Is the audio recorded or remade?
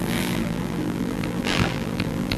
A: remade